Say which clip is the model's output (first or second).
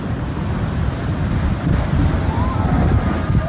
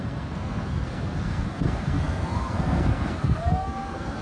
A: second